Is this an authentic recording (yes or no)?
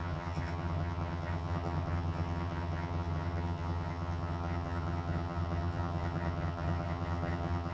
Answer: no